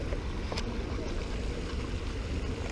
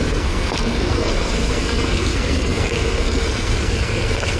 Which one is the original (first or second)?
first